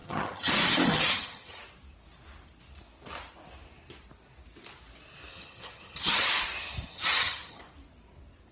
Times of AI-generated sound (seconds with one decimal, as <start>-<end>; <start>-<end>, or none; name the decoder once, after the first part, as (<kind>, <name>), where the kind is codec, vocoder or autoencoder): 0.0-0.5 (vocoder, HiFi-GAN); 0.9-1.6; 5.3-6.3; 6.9-7.6